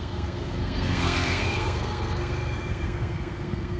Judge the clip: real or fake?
fake